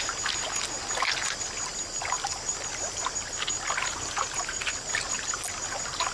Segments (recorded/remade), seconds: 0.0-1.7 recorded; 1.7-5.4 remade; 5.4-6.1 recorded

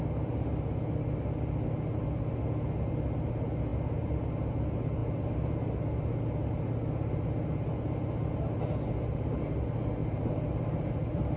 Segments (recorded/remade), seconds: 0.0-10.0 recorded; 10.0-10.9 remade; 10.9-11.4 recorded

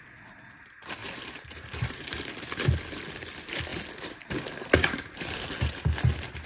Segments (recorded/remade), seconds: 0.0-1.0 recorded; 1.0-2.5 remade; 2.5-6.5 recorded